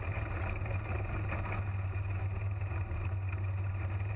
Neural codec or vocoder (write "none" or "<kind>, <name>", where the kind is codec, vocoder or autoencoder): none